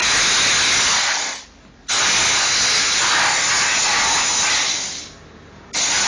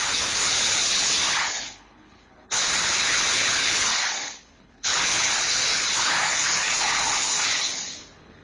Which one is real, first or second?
first